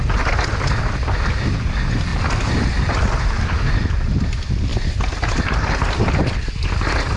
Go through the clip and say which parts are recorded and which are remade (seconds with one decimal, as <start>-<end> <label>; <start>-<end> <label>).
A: 0.0-7.2 recorded